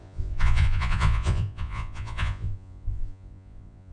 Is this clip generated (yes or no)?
yes